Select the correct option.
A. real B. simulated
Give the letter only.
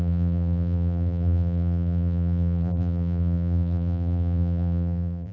B